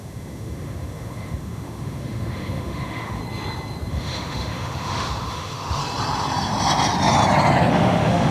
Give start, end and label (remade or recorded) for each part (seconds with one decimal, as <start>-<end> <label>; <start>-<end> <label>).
0.0-3.2 remade; 3.2-3.9 recorded; 3.9-5.8 remade; 5.8-7.7 recorded; 7.7-8.3 remade